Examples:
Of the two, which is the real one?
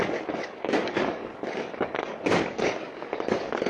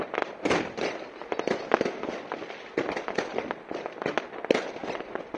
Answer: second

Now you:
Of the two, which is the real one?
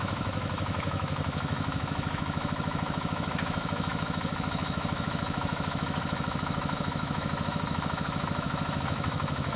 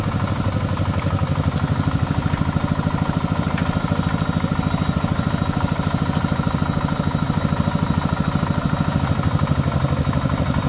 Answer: second